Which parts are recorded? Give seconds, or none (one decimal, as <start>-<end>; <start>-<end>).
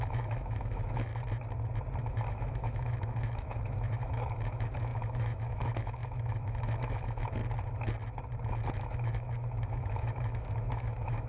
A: 1.1-2.0; 7.4-8.7